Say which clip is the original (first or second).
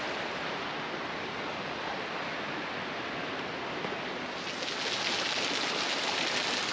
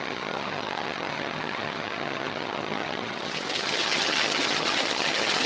first